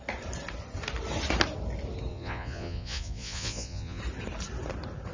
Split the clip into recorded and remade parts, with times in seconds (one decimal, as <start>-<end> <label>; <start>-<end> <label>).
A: 0.0-2.1 recorded; 2.1-4.0 remade; 4.0-5.1 recorded